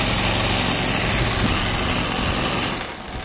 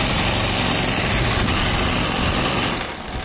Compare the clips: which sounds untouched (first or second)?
first